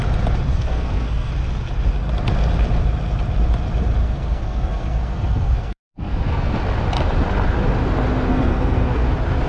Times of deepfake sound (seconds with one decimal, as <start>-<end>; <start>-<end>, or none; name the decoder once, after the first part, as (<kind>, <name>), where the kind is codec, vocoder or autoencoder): 0.5-1.3 (codec, SNAC); 4.0-6.6; 8.3-9.1